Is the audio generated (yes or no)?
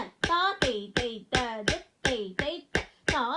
no